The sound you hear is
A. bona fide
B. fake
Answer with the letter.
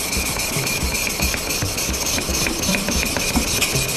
B